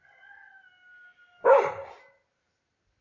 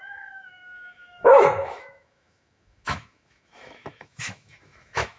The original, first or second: first